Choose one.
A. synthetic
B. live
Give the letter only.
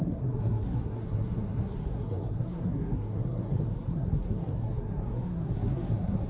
A